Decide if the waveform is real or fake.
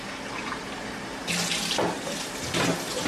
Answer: real